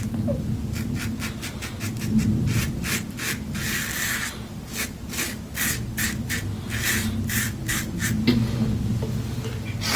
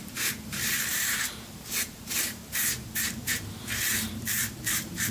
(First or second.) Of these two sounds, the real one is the first